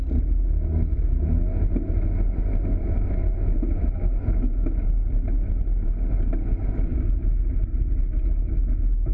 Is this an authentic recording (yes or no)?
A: yes